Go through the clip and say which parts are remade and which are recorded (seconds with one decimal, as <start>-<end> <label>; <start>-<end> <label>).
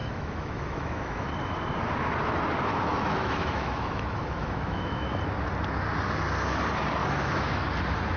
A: 0.0-1.3 remade; 1.3-2.7 recorded; 2.7-5.2 remade; 5.2-7.0 recorded; 7.0-7.6 remade; 7.6-8.2 recorded